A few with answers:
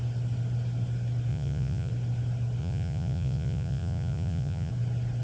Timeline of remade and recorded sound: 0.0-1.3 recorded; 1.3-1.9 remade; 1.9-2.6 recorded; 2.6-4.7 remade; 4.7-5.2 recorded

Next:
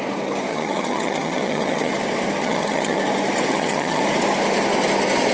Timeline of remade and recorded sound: 0.0-0.5 recorded; 0.5-1.9 remade; 1.9-2.4 recorded; 2.4-3.0 remade; 3.0-3.5 recorded; 3.5-4.0 remade; 4.0-5.3 recorded

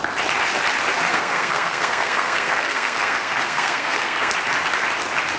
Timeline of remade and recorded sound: 0.0-1.1 recorded; 1.1-4.3 remade; 4.3-5.4 recorded

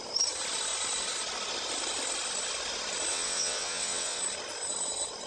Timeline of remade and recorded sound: 0.0-3.1 recorded; 3.1-4.2 remade; 4.2-5.3 recorded